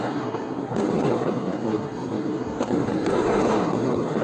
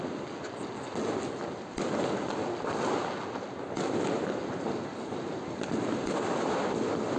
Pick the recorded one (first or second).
second